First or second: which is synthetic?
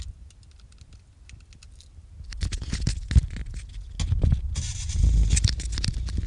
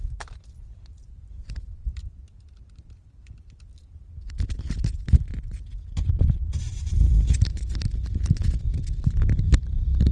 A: second